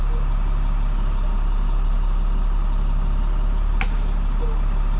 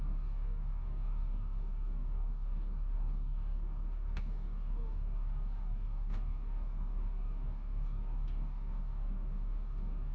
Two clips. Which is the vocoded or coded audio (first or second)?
second